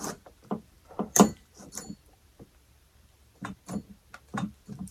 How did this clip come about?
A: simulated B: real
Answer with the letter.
A